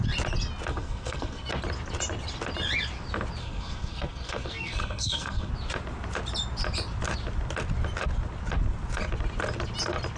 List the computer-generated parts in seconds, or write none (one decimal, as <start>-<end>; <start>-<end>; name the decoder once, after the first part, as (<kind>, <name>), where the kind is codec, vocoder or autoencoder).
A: 0.7-1.5 (codec, SNAC); 3.4-5.5